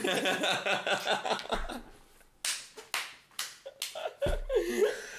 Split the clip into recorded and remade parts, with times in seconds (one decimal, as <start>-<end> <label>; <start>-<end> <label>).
0.0-5.2 recorded